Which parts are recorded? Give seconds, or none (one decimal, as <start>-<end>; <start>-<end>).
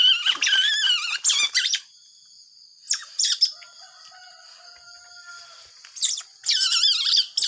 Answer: 0.0-7.5